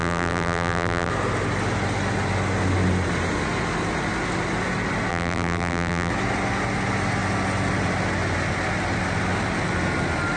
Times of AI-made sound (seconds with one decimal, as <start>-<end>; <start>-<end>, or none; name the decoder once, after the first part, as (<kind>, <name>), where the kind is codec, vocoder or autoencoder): 0.0-1.1 (vocoder, BigVGAN v2); 5.1-6.1